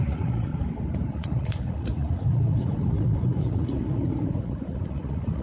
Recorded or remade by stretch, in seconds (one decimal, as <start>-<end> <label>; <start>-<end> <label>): 0.0-0.5 remade; 0.5-1.1 recorded; 1.1-5.4 remade